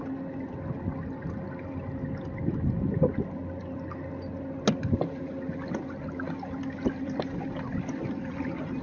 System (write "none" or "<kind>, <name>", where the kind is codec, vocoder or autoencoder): none